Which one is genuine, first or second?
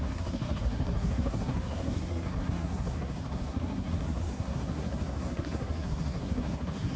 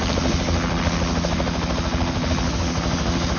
second